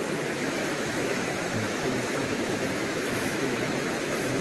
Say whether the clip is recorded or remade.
remade